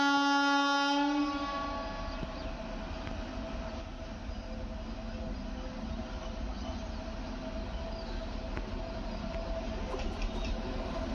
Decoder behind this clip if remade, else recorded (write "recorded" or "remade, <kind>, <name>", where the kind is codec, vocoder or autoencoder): recorded